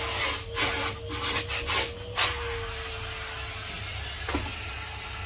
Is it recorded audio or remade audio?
recorded